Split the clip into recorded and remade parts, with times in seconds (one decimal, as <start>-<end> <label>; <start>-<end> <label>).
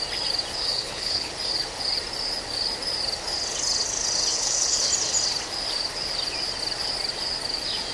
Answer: 0.0-0.7 recorded; 0.7-1.3 remade; 1.3-4.3 recorded; 4.3-4.9 remade; 4.9-7.9 recorded